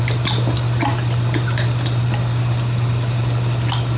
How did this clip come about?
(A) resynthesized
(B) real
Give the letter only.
B